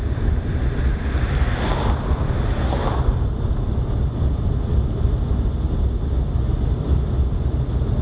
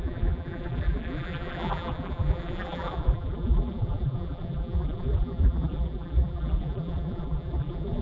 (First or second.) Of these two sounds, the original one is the first